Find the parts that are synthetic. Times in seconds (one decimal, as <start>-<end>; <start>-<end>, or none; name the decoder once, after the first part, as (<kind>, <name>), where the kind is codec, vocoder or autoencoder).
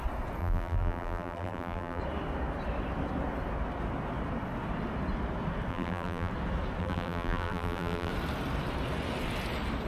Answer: 0.4-2.0 (vocoder, BigVGAN v2); 5.7-6.3; 6.8-8.1